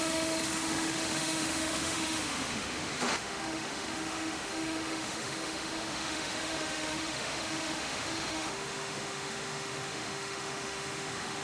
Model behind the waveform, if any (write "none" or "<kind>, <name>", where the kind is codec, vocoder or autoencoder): autoencoder, DAC-VAE